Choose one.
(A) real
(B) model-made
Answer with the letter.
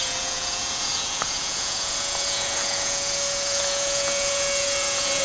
B